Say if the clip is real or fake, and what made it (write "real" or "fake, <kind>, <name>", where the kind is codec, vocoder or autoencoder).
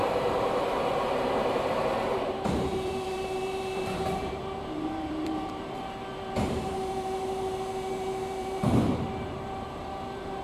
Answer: fake, vocoder, BigVGAN v2